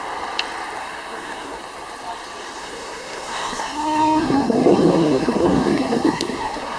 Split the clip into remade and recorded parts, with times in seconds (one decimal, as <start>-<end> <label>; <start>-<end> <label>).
0.0-0.8 recorded; 0.8-1.6 remade; 1.6-2.6 recorded; 2.6-6.8 remade